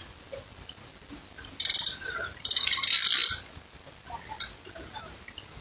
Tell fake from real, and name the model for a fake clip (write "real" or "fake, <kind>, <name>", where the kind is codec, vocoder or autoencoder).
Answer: real